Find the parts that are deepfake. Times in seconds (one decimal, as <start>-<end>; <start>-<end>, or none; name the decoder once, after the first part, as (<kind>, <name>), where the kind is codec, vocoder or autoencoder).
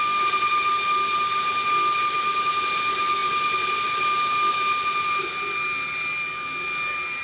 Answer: none